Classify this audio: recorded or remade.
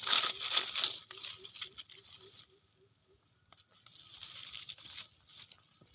recorded